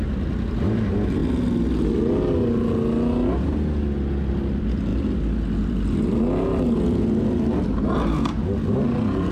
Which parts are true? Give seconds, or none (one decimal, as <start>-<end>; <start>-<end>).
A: 0.0-9.3

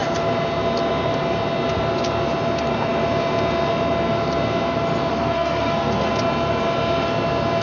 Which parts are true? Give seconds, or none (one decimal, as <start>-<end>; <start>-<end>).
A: 0.0-5.1; 6.1-7.6

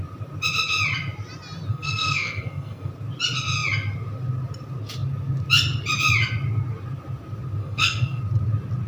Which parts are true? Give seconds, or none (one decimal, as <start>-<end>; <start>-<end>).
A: 0.0-1.7; 2.9-7.6; 8.2-8.9

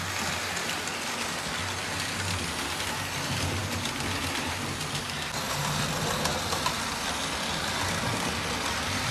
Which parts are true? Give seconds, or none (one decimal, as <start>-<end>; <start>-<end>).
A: 0.0-9.1

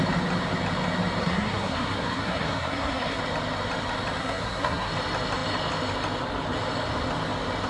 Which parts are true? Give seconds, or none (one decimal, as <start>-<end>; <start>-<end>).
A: 0.0-1.2; 3.2-4.2; 4.9-7.7

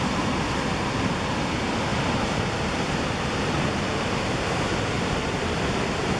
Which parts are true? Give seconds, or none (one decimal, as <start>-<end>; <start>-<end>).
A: 0.0-6.2